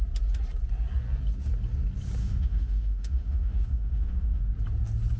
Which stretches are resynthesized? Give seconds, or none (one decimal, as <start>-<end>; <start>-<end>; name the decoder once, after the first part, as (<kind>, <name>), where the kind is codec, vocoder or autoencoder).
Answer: 2.2-4.4 (autoencoder, DAC-VAE)